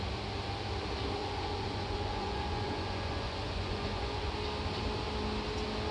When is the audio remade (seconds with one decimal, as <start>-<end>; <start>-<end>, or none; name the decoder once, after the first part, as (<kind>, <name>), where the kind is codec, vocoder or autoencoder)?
1.2-4.3 (vocoder, Vocos)